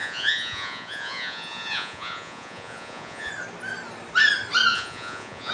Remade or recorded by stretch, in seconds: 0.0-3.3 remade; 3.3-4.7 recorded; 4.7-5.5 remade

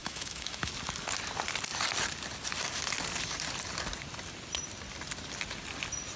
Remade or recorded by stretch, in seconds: 0.0-0.7 remade; 0.7-6.2 recorded

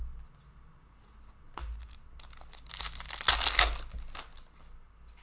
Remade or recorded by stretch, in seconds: 0.0-5.2 recorded

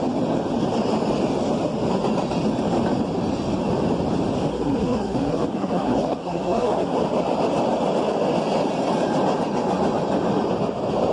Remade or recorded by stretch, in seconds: 0.0-4.5 recorded; 4.5-7.0 remade; 7.0-11.1 recorded

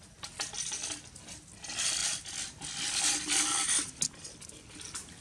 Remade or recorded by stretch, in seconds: 0.0-5.2 recorded

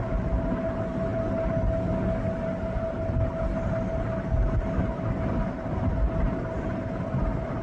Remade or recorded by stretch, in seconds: 0.0-7.6 recorded